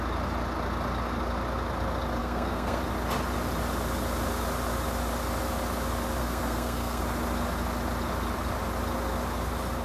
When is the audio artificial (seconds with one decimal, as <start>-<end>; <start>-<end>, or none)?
2.2-2.8; 6.2-7.0